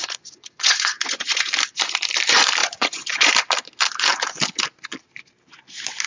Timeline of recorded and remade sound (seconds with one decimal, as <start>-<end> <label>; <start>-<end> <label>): 0.0-1.5 remade; 1.5-2.6 recorded; 2.6-3.3 remade; 3.3-6.1 recorded